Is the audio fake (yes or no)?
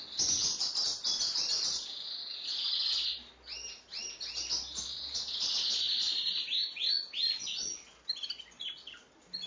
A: no